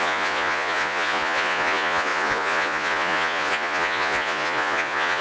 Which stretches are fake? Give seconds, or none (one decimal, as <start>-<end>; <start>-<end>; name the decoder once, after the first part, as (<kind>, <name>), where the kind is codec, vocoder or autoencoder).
0.0-5.2 (vocoder, Vocos)